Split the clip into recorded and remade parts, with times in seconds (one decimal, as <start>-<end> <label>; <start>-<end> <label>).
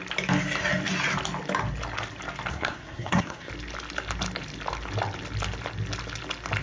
0.0-2.5 recorded; 2.5-3.5 remade; 3.5-6.6 recorded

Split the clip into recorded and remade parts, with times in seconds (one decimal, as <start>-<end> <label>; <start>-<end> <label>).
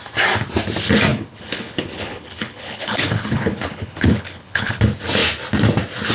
0.0-1.1 recorded; 1.1-4.8 remade; 4.8-6.1 recorded